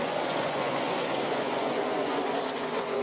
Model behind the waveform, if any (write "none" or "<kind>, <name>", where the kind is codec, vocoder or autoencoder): vocoder, Vocos